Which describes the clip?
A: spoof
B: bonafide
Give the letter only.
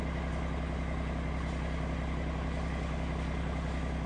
B